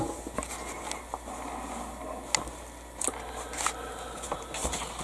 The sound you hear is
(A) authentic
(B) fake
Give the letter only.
A